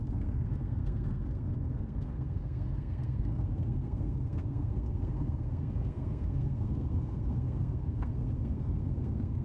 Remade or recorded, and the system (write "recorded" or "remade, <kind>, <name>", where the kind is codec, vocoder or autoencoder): remade, codec, SNAC